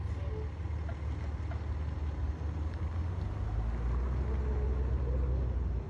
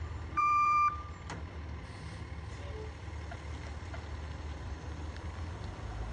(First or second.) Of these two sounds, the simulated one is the second